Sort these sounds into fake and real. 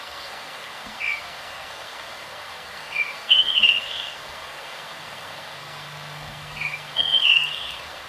fake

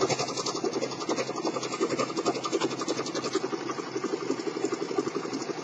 real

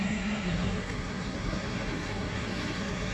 fake